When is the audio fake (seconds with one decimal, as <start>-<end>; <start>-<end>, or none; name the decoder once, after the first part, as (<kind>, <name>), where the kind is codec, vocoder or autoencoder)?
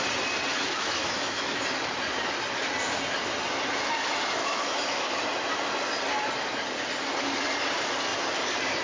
0.5-1.6 (autoencoder, DAC-VAE); 4.4-5.2